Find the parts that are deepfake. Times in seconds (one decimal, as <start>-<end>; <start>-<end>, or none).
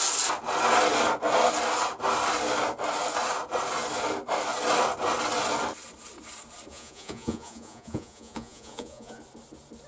6.7-9.2